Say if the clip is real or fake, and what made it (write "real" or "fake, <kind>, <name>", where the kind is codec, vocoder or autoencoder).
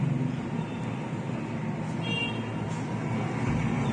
real